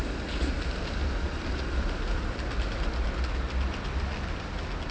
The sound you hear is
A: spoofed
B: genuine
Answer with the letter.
B